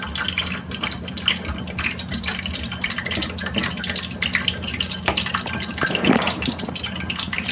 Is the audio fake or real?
real